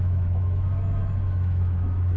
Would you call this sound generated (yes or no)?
yes